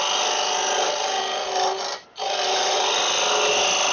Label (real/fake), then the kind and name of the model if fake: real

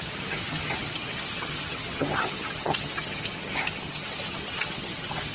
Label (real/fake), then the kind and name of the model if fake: fake, vocoder, HiFi-GAN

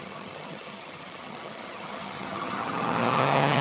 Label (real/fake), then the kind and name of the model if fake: fake, vocoder, HiFi-GAN